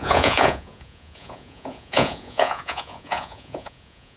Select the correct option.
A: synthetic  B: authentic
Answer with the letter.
A